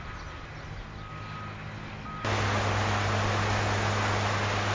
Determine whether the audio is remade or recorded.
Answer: recorded